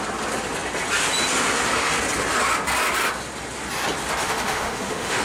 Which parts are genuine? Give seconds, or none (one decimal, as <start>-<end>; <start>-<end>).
0.0-4.2